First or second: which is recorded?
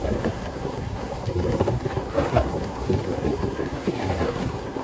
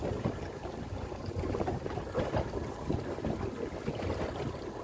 second